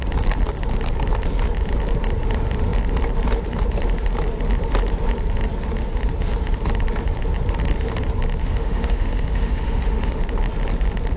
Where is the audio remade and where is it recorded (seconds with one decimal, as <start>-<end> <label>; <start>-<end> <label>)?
0.0-8.4 recorded; 8.4-10.2 remade; 10.2-11.2 recorded